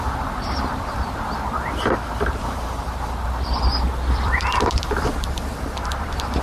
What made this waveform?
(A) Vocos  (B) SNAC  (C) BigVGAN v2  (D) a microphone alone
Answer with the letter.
C